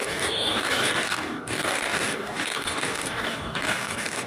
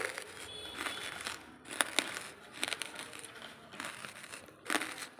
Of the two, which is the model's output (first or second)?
first